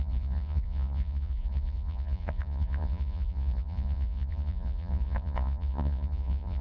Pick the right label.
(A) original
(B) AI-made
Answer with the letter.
B